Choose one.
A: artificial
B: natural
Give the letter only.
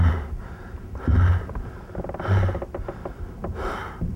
B